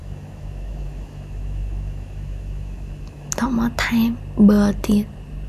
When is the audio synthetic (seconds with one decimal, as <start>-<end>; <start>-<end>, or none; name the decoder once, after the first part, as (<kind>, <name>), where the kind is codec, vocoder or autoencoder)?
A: 0.0-3.3 (autoencoder, DAC-VAE)